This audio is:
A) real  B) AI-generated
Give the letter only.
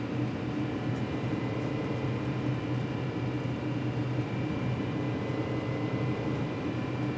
A